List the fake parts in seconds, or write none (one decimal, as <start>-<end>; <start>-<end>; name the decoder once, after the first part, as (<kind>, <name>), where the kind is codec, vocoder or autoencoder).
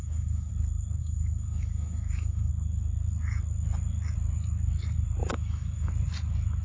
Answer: 0.0-0.5 (autoencoder, DAC-VAE); 1.0-2.5; 5.3-5.9